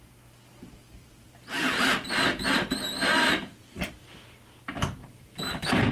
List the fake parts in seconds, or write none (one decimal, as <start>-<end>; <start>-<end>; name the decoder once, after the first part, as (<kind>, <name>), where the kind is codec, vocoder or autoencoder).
0.5-3.9 (vocoder, BigVGAN v2); 5.0-5.9